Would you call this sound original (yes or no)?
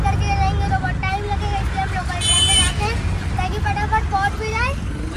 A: yes